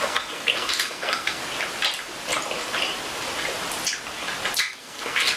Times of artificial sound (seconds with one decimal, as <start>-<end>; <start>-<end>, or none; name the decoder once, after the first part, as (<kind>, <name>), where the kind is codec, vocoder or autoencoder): 0.0-1.4 (codec, SNAC); 4.6-5.4

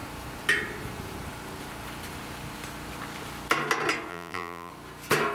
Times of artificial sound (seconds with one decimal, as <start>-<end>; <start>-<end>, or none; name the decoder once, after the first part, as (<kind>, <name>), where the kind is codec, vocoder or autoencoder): 4.1-4.7 (vocoder, BigVGAN v2)

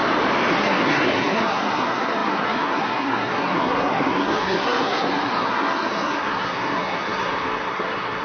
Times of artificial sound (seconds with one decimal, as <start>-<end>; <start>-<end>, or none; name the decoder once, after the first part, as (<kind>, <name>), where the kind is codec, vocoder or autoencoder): 0.5-8.2 (codec, SNAC)

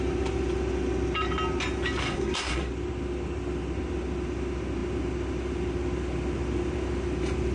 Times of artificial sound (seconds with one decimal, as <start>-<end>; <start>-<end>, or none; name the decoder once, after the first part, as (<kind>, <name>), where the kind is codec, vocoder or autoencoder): 2.0-2.7 (codec, SNAC)

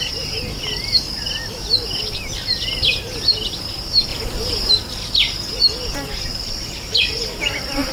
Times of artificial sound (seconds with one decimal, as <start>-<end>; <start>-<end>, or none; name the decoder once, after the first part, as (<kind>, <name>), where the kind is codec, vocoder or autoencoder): 0.0-1.1 (vocoder, BigVGAN v2); 3.0-6.3; 7.0-7.9

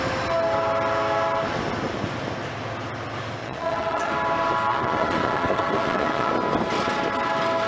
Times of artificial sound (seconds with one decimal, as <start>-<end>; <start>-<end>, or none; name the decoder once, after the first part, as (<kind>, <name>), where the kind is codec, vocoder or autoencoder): 3.4-4.1 (vocoder, Vocos); 4.7-6.3

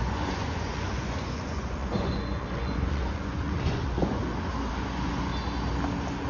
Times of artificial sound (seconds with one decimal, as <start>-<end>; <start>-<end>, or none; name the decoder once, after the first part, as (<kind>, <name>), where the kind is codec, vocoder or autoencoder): 0.0-4.2 (vocoder, Vocos); 4.7-5.3